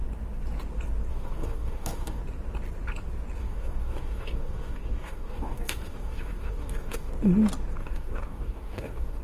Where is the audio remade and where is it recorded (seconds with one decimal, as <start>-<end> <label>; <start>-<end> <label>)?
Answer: 0.0-1.1 recorded; 1.1-2.2 remade; 2.2-3.4 recorded; 3.4-7.1 remade; 7.1-7.8 recorded; 7.8-9.2 remade